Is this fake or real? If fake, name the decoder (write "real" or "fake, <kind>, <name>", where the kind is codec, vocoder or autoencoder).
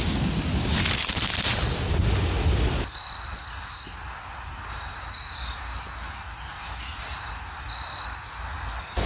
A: real